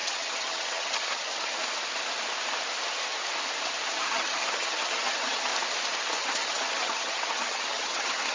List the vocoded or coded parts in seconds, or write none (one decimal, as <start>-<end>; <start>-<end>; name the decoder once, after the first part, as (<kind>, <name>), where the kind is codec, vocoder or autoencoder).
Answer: 0.0-1.6 (vocoder, HiFi-GAN); 3.9-5.5; 6.2-8.3